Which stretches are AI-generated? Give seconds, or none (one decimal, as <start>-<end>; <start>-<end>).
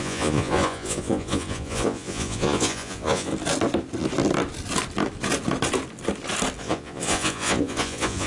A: 0.0-3.3; 6.6-8.3